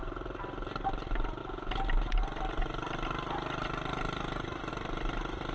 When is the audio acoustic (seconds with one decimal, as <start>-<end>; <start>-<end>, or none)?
0.0-5.5